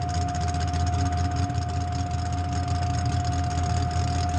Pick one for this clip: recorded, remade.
recorded